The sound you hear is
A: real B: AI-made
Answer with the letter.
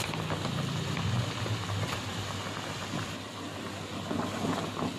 A